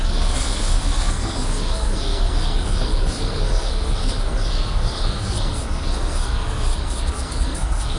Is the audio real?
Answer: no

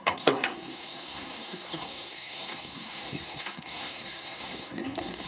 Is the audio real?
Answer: no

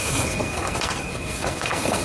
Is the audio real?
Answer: no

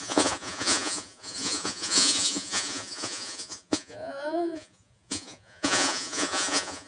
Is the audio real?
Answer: no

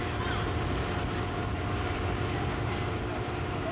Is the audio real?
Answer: yes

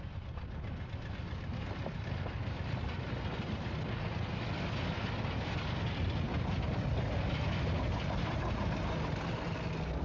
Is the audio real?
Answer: yes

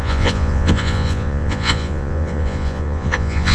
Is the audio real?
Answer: no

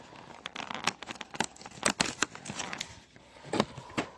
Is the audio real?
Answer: yes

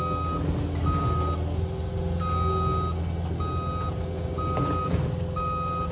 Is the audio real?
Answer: yes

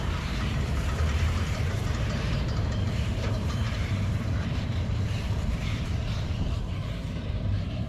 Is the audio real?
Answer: no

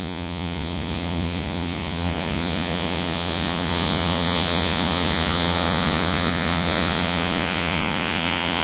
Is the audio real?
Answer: no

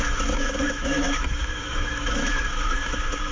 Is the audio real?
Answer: no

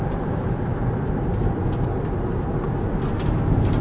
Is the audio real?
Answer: yes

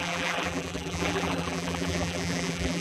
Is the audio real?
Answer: no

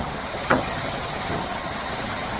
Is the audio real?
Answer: no